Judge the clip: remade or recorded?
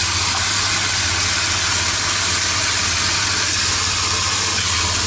recorded